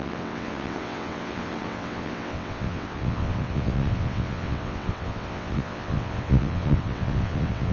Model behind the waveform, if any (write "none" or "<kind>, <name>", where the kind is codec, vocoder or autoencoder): vocoder, WaveNeXt